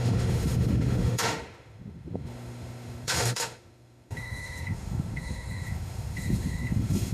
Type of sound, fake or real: fake